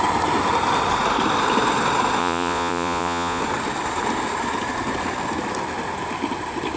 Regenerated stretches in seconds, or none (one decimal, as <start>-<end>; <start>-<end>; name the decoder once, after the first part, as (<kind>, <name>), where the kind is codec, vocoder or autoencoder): 2.2-3.4 (vocoder, Vocos)